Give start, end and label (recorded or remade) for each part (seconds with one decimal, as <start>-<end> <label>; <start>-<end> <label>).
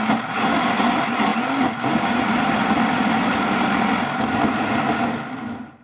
0.0-5.8 recorded